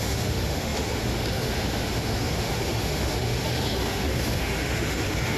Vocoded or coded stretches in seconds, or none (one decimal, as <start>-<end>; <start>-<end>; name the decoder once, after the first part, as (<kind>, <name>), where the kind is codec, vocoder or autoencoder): 0.0-5.4 (autoencoder, DAC-VAE)